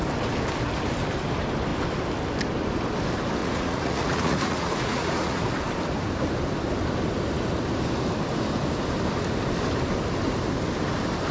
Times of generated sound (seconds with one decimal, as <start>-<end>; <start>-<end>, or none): 3.4-5.4